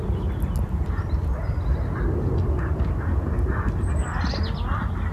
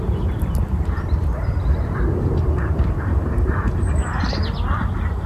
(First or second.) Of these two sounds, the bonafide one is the first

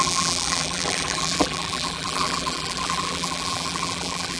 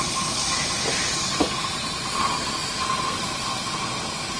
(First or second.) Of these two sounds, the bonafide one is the second